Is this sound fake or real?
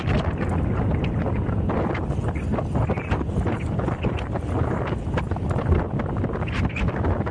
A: real